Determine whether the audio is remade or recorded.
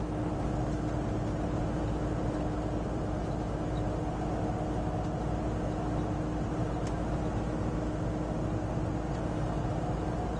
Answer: recorded